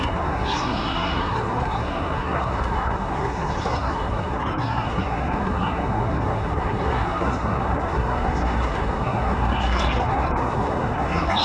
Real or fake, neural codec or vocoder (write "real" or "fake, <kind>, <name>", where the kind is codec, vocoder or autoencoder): fake, codec, SNAC